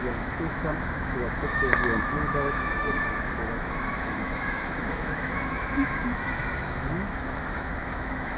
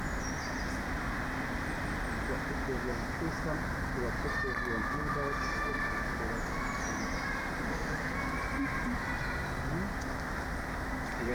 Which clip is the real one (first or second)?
second